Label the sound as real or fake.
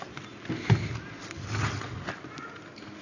real